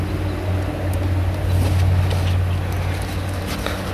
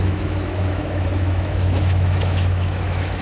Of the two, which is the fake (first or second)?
second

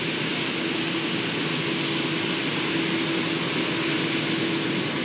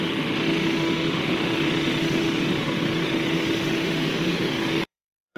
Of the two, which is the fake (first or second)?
second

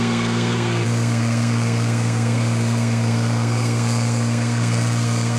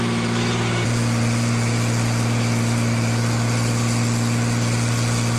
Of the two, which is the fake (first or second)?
first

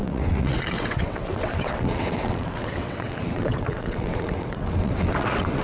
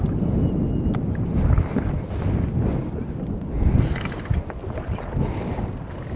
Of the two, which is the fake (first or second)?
first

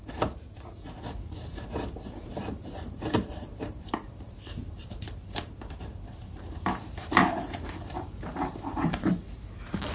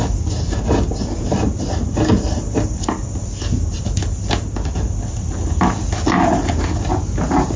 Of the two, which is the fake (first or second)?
first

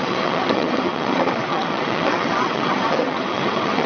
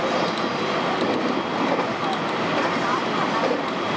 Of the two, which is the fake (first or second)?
first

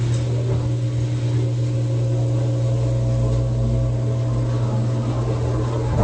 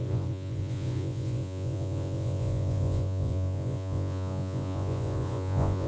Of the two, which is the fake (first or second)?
second